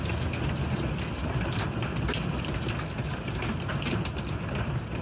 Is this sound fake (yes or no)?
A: no